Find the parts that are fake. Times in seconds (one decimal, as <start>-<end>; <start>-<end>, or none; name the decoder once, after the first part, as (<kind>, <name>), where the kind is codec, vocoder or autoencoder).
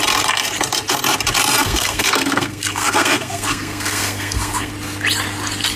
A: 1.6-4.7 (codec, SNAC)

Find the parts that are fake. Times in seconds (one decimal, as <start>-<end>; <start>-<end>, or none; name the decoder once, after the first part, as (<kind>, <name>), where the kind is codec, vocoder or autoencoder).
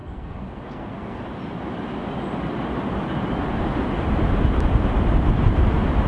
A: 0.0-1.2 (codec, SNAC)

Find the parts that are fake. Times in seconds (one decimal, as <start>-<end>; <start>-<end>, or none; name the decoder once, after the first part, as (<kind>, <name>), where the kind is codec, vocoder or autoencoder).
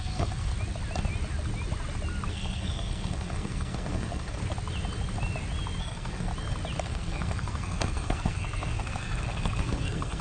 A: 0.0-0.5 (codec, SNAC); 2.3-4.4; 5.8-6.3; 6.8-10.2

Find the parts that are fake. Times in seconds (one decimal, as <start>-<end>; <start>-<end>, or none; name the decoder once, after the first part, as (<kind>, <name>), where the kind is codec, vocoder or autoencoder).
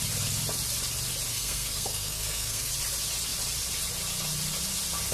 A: 1.3-2.7 (codec, SNAC)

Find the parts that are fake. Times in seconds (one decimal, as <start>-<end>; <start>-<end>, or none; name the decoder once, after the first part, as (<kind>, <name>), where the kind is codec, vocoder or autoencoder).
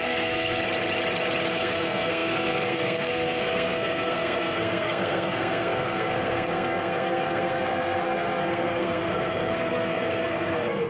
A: 0.0-0.6 (codec, SNAC); 1.5-10.9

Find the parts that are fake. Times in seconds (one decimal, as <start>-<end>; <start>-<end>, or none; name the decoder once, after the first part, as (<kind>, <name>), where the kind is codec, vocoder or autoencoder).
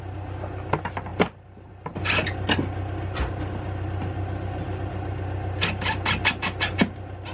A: none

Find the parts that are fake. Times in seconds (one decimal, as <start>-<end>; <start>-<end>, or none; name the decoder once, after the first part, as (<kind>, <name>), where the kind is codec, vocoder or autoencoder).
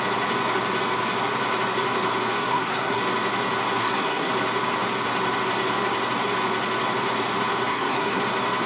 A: 2.4-3.0 (codec, SNAC); 3.8-4.3; 7.7-8.2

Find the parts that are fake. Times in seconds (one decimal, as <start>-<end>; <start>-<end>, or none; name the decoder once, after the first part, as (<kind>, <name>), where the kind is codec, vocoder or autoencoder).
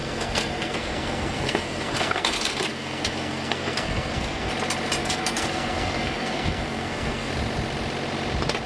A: 0.0-4.5 (codec, SNAC); 5.0-7.3